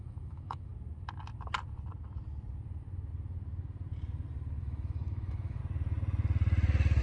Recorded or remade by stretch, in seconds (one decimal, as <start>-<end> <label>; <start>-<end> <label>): 0.0-0.7 remade; 0.7-4.6 recorded; 4.6-5.6 remade; 5.6-7.0 recorded